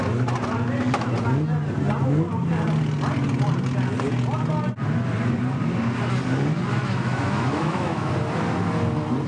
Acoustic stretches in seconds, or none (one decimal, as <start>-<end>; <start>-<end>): 0.0-6.8; 8.1-9.3